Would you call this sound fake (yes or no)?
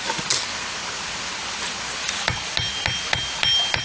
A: no